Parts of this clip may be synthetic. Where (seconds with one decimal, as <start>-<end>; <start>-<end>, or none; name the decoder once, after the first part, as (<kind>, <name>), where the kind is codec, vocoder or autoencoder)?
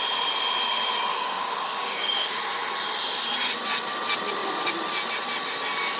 1.1-2.4 (codec, DAC)